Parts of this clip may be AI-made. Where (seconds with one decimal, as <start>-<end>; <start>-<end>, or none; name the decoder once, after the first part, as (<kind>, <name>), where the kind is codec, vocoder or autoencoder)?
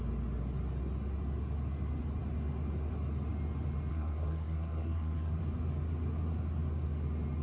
3.9-5.4 (codec, SNAC)